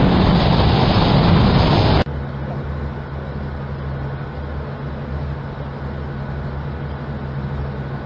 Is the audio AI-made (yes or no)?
no